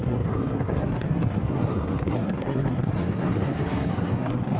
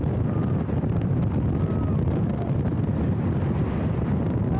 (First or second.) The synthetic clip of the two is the first